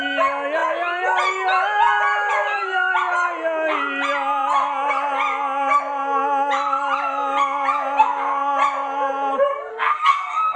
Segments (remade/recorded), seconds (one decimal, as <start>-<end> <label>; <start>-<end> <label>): 0.0-9.7 recorded; 9.7-10.6 remade